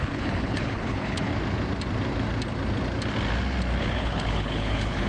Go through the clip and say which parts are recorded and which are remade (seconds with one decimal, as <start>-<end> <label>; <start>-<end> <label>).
0.0-1.3 remade; 1.3-3.8 recorded; 3.8-5.1 remade